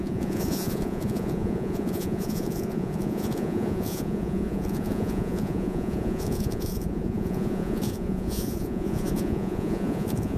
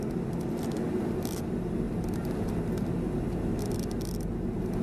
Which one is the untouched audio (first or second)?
second